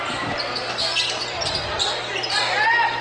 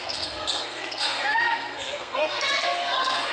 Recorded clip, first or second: first